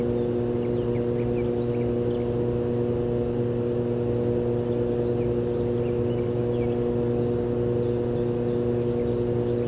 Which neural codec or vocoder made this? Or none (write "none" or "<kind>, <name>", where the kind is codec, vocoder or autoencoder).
none